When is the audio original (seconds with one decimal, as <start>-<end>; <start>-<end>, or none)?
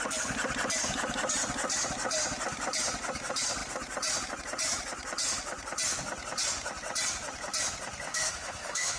0.0-8.1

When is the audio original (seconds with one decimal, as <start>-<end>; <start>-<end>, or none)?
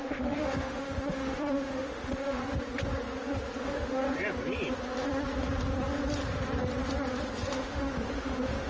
2.4-3.6; 4.0-7.5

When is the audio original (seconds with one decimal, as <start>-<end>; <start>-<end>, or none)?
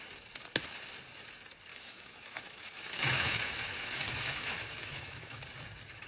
0.0-1.7; 5.4-6.1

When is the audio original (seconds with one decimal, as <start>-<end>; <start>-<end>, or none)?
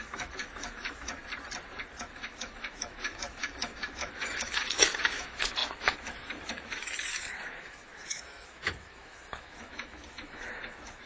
1.1-2.0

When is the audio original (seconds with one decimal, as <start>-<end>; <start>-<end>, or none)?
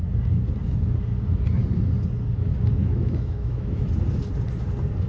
0.0-2.8; 3.9-5.1